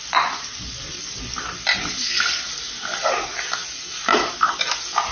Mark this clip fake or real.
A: real